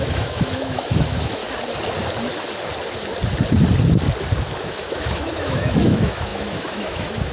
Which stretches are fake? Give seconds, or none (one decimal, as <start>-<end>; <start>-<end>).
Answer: 0.0-1.4; 4.6-7.3